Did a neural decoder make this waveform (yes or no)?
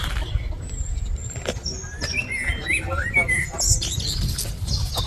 no